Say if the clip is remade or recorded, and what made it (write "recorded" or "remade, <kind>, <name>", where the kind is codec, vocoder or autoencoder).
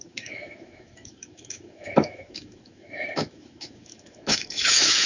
remade, autoencoder, DAC-VAE